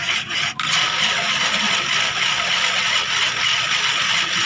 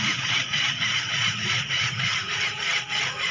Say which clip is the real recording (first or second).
first